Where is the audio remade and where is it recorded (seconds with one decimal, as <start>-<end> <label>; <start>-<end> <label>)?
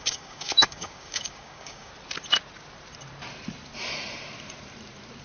0.0-1.9 remade; 1.9-5.2 recorded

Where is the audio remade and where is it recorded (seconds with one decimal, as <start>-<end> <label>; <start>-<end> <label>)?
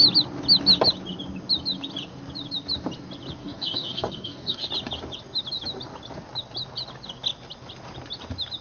0.0-3.4 recorded; 3.4-4.7 remade; 4.7-8.6 recorded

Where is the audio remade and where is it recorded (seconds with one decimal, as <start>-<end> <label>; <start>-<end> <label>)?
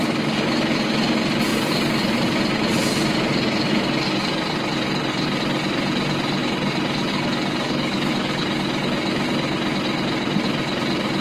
0.0-7.1 recorded; 7.1-8.4 remade; 8.4-11.2 recorded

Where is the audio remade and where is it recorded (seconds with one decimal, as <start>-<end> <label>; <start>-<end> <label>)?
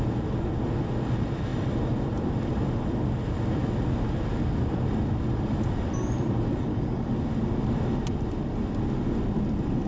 0.0-6.5 recorded; 6.5-7.1 remade; 7.1-9.9 recorded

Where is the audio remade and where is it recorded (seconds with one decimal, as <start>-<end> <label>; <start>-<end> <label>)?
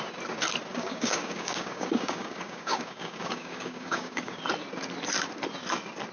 0.0-0.7 recorded; 0.7-4.4 remade; 4.4-6.1 recorded